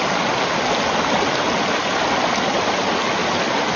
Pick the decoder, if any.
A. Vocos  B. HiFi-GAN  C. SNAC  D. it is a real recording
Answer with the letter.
D